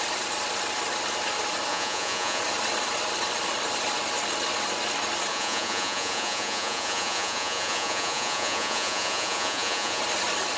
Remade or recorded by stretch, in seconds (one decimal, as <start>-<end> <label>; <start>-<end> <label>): 0.0-1.7 recorded; 1.7-2.4 remade; 2.4-5.3 recorded; 5.3-10.0 remade; 10.0-10.6 recorded